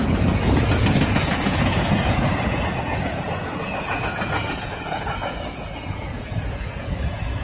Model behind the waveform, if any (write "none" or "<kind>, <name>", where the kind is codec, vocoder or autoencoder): vocoder, Vocos